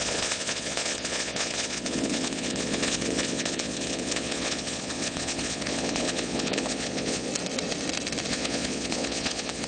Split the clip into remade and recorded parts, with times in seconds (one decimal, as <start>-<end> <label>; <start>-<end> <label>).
0.0-7.3 remade; 7.3-8.3 recorded; 8.3-9.7 remade